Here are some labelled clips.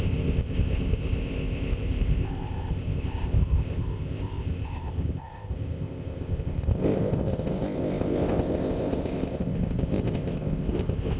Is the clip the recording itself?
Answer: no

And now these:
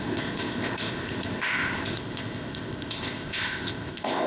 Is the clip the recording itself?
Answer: no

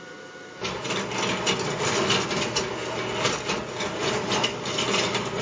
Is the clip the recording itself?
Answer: yes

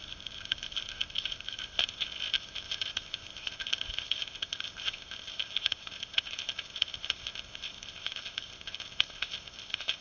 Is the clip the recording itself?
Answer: no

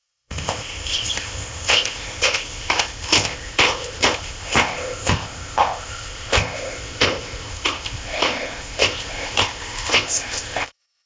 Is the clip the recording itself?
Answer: no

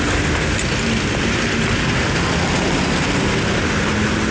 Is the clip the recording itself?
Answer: yes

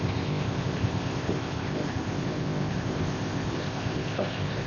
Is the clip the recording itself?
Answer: no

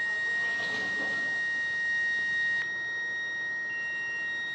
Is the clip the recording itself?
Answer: yes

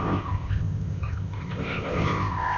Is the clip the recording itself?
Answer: no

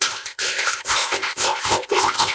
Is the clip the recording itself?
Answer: no